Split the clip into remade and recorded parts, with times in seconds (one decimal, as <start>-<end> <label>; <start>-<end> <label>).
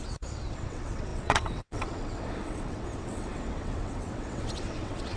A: 0.0-5.2 remade